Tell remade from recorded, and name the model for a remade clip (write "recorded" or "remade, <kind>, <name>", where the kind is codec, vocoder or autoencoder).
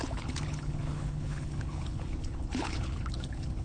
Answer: remade, codec, HILCodec